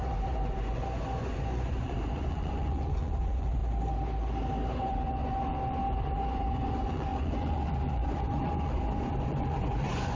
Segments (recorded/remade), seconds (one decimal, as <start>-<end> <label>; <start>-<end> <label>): 0.0-3.6 remade; 3.6-4.7 recorded; 4.7-10.2 remade